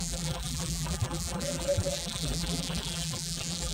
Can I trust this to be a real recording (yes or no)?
no